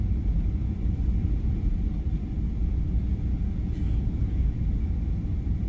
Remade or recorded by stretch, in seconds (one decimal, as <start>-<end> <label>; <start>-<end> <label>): 0.0-1.2 recorded; 1.2-2.0 remade; 2.0-2.6 recorded; 2.6-4.9 remade; 4.9-5.7 recorded